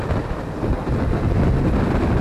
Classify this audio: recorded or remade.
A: recorded